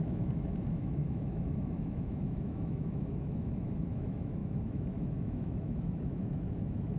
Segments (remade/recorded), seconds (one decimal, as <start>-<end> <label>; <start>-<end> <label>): 0.0-7.0 remade